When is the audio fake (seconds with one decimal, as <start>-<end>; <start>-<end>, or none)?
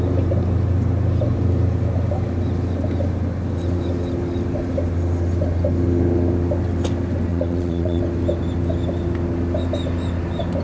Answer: 7.3-8.0